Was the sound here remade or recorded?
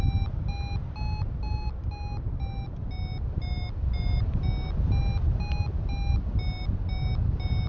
recorded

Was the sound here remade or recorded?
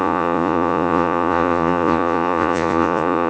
remade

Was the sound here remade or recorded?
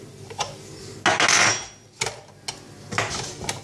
recorded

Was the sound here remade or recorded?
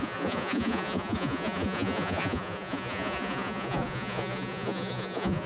remade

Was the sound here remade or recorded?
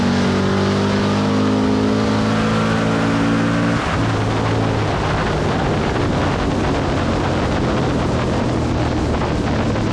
recorded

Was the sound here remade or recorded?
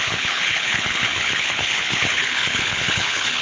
remade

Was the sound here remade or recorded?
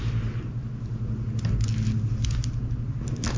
recorded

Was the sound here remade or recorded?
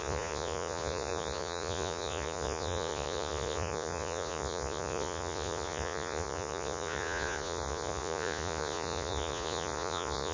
remade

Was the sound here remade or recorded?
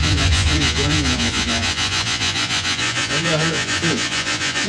remade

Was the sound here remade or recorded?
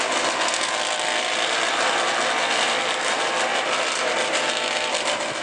recorded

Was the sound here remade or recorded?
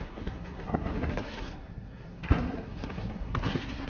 remade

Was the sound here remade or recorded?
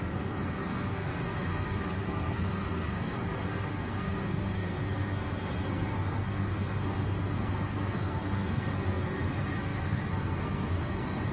remade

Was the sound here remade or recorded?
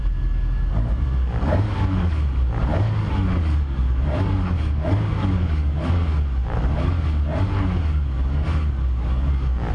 remade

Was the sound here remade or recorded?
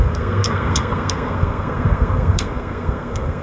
remade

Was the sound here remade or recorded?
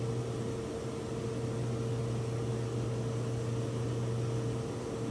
recorded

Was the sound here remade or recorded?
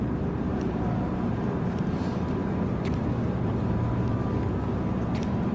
remade